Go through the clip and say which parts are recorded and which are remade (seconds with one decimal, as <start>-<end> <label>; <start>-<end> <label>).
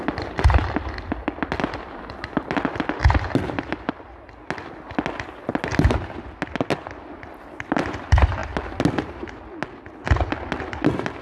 0.0-11.2 recorded